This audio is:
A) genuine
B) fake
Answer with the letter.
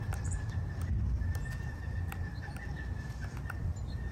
A